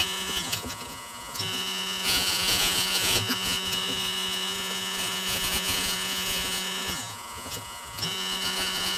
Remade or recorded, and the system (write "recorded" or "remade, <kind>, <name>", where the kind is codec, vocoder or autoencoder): remade, vocoder, Vocos